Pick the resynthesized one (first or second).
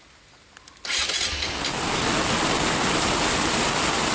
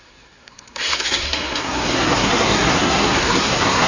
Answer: second